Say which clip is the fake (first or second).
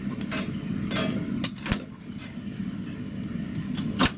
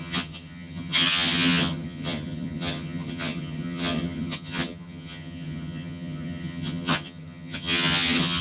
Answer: second